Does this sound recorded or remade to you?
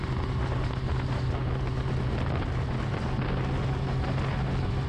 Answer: recorded